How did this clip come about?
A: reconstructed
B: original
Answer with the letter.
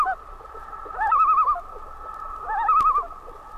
B